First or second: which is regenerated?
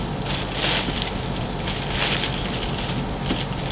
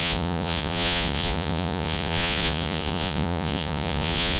second